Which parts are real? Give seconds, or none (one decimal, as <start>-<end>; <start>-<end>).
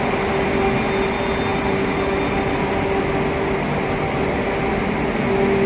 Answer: 0.0-5.7